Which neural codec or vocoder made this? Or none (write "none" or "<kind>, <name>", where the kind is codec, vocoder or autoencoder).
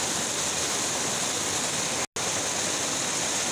none